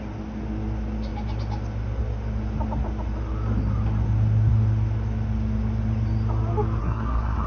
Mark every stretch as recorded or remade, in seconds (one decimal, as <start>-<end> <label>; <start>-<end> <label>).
0.0-6.8 recorded; 6.8-7.5 remade